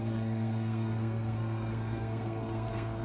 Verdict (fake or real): fake